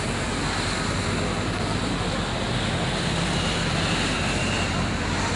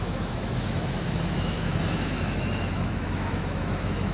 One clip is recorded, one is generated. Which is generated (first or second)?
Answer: second